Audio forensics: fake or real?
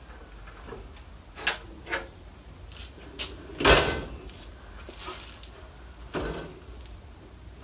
real